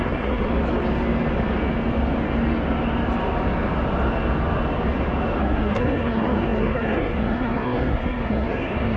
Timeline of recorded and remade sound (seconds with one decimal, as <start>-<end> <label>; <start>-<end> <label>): 0.0-0.5 remade; 0.5-5.4 recorded; 5.4-9.0 remade